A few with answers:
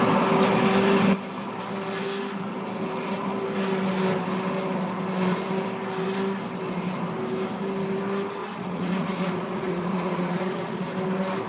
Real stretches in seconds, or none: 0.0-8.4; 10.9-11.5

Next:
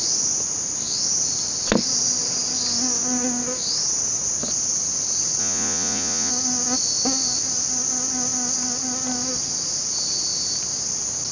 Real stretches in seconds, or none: 0.0-5.4; 6.3-11.3